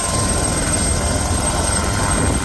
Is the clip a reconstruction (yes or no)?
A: no